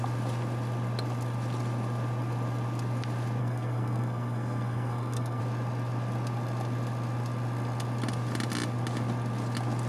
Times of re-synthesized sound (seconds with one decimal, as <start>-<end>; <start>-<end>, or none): 3.4-5.4